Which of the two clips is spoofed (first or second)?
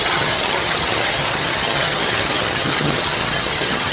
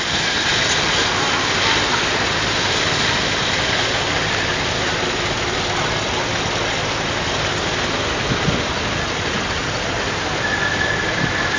first